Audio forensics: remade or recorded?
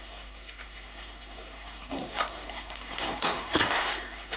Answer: remade